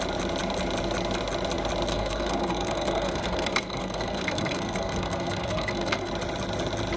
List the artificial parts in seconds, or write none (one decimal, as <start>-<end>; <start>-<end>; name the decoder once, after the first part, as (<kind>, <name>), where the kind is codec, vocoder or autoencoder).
1.9-6.1 (codec, SNAC)